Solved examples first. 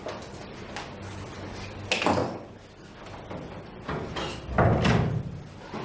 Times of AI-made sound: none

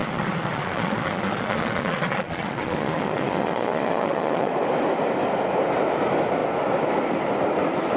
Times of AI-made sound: 0.0-4.5 (vocoder, Vocos)

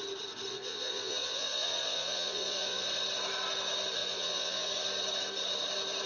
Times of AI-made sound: 0.5-2.8 (vocoder, Vocos); 4.0-4.7

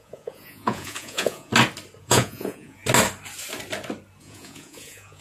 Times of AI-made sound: 0.0-1.5 (vocoder, Vocos); 2.0-2.8; 4.2-5.2

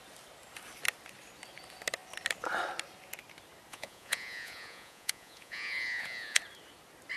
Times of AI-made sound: 3.7-6.4 (vocoder, Vocos)

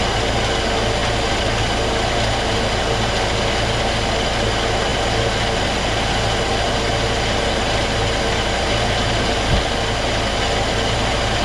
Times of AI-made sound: none